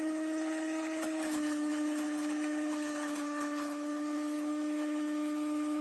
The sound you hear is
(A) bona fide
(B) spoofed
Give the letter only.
B